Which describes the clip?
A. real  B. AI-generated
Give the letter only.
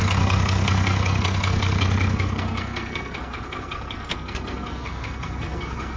B